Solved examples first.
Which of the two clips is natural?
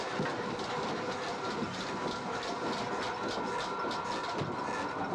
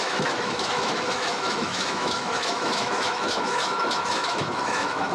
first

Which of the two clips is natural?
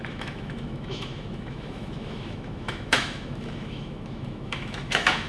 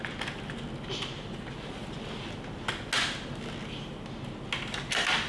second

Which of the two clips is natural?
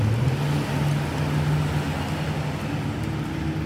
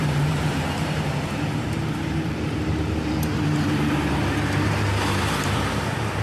first